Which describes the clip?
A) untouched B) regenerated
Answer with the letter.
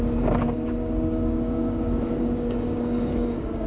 B